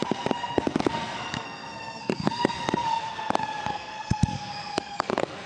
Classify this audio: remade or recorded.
remade